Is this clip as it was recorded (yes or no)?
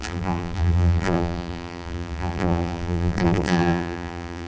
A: no